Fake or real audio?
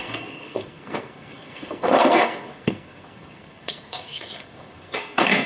fake